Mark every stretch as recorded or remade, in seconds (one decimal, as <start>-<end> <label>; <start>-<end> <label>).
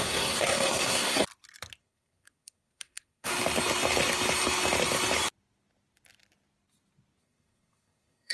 0.0-1.2 remade; 1.2-1.8 recorded; 1.8-3.3 remade; 3.3-7.2 recorded; 7.2-8.3 remade